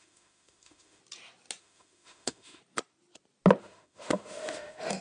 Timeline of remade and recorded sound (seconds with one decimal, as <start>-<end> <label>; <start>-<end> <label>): 0.0-1.0 remade; 1.0-1.6 recorded; 1.6-2.6 remade; 2.6-3.6 recorded; 3.6-5.0 remade